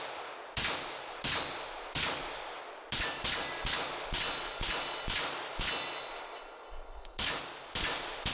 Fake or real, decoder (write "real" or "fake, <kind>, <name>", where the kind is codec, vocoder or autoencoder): real